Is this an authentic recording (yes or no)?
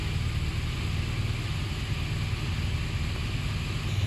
yes